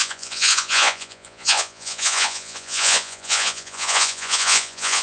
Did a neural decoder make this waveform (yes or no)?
yes